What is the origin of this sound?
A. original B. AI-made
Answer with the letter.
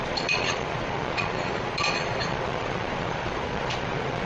B